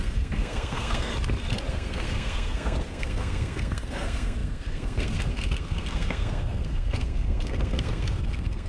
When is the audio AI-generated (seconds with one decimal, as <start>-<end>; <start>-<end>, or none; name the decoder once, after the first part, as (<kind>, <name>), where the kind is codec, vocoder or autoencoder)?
0.0-1.1 (codec, SNAC); 1.7-8.7